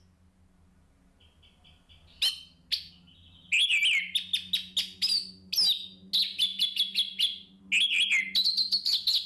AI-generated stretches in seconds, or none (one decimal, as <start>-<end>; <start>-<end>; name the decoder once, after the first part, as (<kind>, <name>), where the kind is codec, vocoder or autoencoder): none